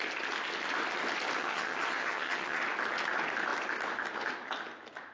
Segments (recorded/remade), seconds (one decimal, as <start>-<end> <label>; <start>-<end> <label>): 0.0-1.4 recorded; 1.4-2.6 remade; 2.6-5.1 recorded